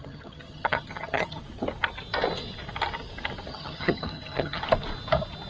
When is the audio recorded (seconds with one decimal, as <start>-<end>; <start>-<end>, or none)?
1.4-3.5; 4.6-5.5